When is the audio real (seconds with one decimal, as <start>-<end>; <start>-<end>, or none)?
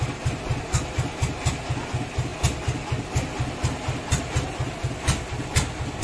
0.0-6.0